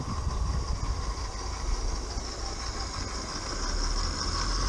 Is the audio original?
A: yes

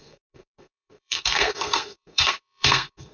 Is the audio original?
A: no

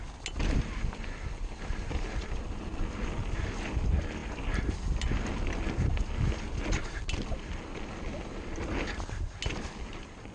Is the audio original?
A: yes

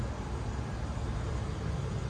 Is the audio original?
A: yes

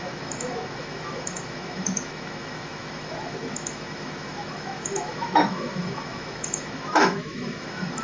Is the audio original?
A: no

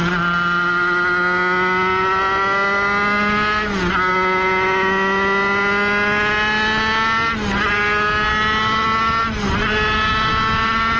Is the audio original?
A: yes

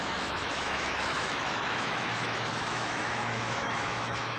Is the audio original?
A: no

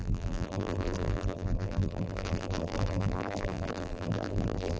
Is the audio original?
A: no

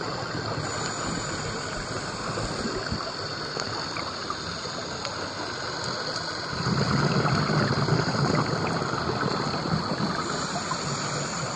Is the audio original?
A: yes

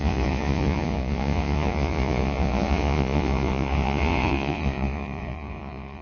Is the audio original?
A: no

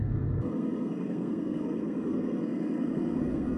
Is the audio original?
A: no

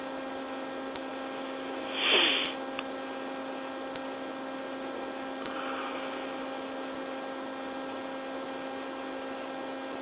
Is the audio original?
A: yes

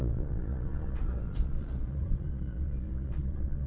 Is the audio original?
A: no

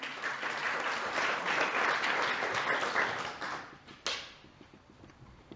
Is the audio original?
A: yes